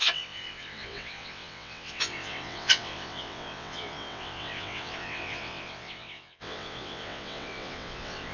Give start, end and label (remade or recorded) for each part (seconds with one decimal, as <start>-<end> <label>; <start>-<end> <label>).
0.0-8.3 remade